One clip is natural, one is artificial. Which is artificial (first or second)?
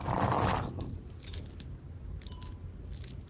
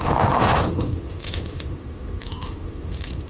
second